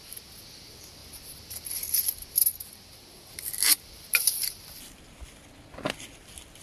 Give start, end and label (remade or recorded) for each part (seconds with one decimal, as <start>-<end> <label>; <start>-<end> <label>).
0.0-1.0 recorded; 1.0-1.7 remade; 1.7-4.1 recorded; 4.1-5.0 remade; 5.0-6.6 recorded